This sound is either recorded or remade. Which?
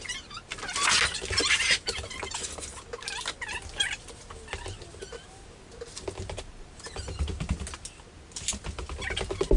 recorded